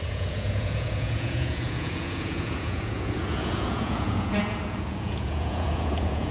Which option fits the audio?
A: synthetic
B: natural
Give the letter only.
A